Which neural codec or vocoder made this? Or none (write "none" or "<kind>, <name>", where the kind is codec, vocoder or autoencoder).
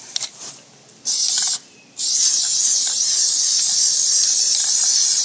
none